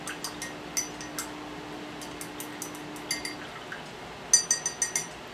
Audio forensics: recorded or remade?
recorded